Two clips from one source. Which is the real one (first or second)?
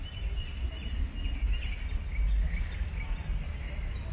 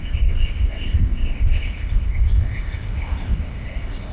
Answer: first